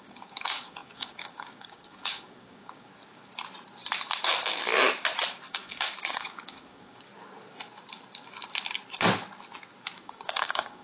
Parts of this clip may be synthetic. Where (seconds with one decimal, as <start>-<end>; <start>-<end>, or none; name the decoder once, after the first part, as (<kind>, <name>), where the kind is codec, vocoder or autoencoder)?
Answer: 0.0-2.9 (codec, DAC); 5.5-7.1; 10.0-10.8